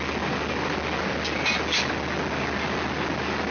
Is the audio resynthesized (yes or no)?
no